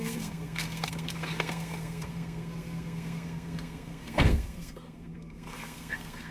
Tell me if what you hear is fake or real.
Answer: fake